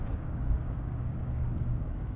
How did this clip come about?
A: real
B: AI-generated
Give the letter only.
B